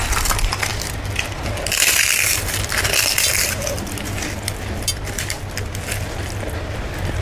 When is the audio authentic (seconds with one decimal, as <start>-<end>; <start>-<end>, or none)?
0.0-7.2

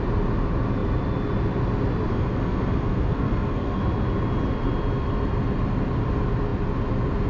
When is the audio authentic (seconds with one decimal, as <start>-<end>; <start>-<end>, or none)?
0.0-2.1; 3.8-7.3